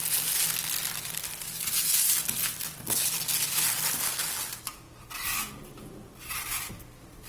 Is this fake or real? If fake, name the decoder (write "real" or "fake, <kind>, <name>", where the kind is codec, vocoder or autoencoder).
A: real